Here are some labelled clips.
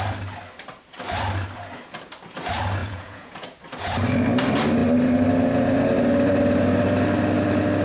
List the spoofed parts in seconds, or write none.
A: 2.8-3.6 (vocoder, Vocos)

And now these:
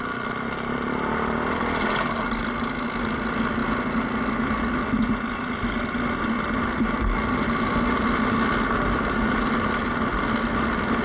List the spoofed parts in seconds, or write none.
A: none

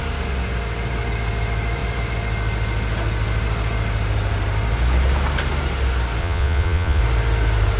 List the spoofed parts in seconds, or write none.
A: 6.2-7.0 (vocoder, Vocos)

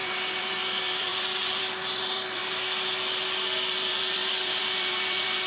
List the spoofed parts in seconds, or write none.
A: 0.0-2.4 (vocoder, BigVGAN v2); 3.7-5.5

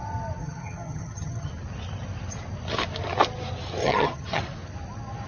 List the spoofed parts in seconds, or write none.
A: 0.4-1.5 (vocoder, HiFi-GAN); 3.8-4.4

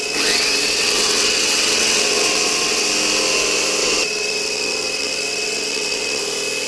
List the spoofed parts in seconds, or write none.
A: 0.0-2.9 (vocoder, WaveNeXt); 3.8-6.2

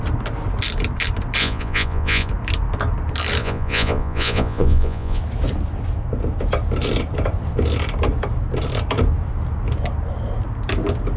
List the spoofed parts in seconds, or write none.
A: 1.4-2.3 (vocoder, Vocos); 3.4-5.2